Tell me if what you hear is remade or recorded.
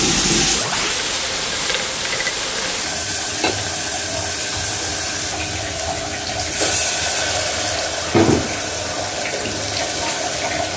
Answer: recorded